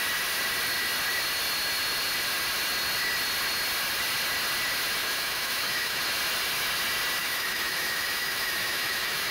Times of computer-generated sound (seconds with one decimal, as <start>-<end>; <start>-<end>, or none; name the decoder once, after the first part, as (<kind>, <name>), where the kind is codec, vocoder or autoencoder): 5.0-6.0 (autoencoder, DAC-VAE); 7.2-9.3

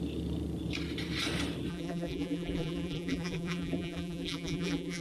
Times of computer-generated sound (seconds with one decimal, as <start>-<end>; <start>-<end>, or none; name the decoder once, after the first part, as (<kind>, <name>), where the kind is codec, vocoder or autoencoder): 1.7-5.0 (vocoder, BigVGAN v2)

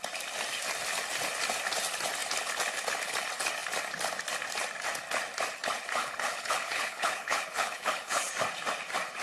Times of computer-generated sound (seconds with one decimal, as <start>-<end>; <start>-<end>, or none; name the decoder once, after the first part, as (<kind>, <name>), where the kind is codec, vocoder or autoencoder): 6.0-8.3 (codec, HILCodec)